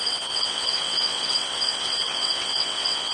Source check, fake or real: fake